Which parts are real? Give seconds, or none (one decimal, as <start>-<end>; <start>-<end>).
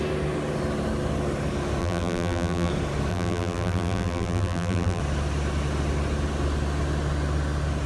0.0-1.8; 2.7-3.1; 5.0-7.9